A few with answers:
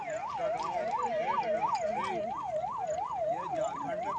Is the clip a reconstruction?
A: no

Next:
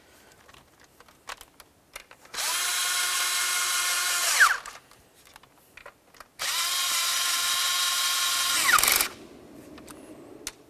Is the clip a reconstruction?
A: no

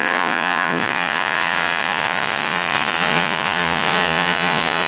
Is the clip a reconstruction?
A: yes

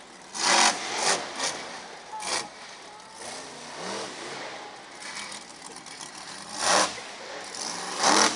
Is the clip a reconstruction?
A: no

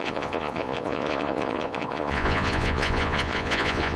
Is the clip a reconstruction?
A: yes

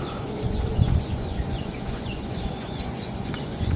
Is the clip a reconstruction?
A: yes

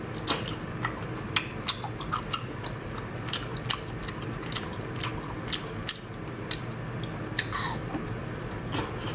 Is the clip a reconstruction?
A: no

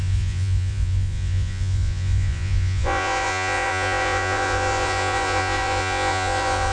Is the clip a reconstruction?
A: yes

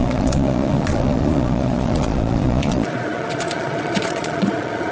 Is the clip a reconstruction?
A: yes